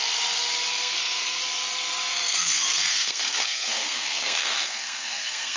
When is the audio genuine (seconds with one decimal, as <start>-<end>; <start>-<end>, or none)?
0.0-0.7; 1.4-2.1